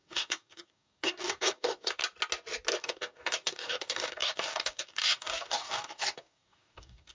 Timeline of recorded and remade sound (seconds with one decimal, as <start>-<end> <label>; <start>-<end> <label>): 0.0-2.0 remade; 2.0-2.8 recorded; 2.8-7.1 remade